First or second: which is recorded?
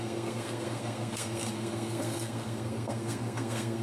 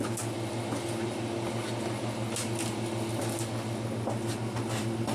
second